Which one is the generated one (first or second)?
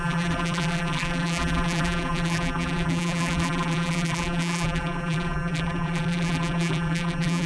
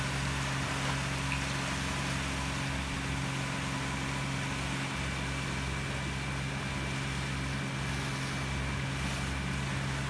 first